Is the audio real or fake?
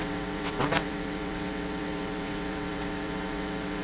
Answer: fake